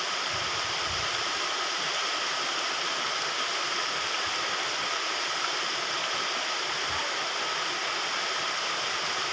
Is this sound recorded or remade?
recorded